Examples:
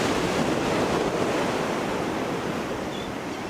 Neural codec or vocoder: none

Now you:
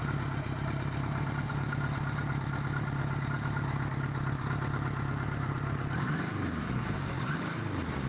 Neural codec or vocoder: none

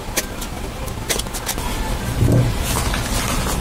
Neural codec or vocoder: none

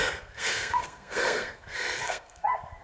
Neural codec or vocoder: codec, SNAC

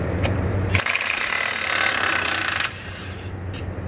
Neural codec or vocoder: vocoder, BigVGAN v2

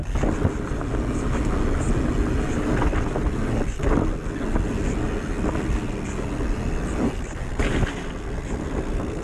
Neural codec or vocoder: none